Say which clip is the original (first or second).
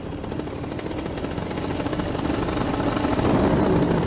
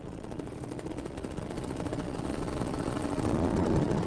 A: first